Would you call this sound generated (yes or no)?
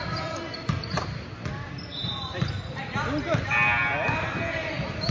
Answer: no